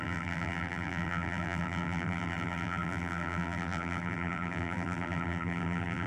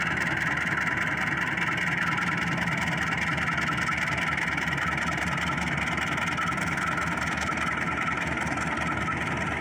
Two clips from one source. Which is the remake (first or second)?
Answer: first